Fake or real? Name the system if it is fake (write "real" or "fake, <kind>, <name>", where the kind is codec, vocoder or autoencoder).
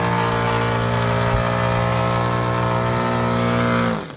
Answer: real